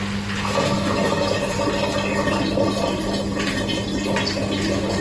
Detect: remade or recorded recorded